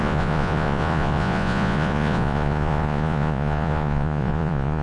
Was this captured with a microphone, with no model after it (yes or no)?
no